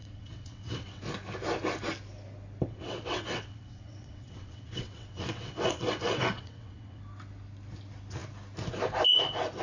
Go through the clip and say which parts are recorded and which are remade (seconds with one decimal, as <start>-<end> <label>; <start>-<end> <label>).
0.0-1.0 remade; 1.0-2.7 recorded; 2.7-7.0 remade; 7.0-9.6 recorded